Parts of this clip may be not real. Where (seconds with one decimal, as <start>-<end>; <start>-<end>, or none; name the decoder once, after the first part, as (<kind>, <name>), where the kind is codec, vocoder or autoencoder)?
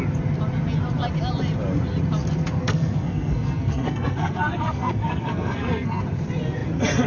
2.6-6.0 (codec, SNAC)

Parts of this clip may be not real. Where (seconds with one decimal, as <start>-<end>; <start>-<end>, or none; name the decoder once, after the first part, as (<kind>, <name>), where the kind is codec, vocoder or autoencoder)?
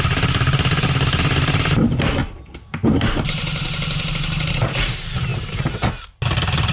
2.2-4.1 (vocoder, BigVGAN v2); 5.3-5.9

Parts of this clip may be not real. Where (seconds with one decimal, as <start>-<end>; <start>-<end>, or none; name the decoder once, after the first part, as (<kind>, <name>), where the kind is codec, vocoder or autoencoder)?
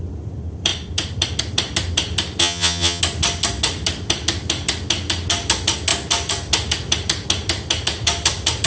2.4-3.0 (vocoder, HiFi-GAN)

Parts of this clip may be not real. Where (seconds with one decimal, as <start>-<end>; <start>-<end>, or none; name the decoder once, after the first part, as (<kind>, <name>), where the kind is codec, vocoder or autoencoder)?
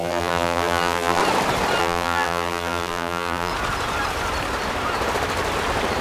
0.0-1.2 (vocoder, BigVGAN v2); 1.8-3.5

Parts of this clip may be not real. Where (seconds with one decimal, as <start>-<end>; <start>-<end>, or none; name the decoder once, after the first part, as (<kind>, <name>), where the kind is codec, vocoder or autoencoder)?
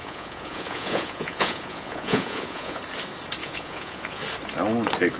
0.0-2.8 (vocoder, Vocos); 3.4-4.2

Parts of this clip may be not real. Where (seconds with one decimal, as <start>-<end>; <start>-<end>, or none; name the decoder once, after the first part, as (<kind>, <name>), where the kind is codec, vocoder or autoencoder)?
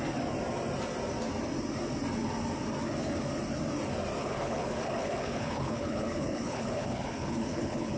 4.2-8.0 (codec, HILCodec)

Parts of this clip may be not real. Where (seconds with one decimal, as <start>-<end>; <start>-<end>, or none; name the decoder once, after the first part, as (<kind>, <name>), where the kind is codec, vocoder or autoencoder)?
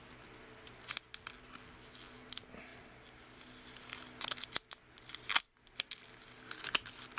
none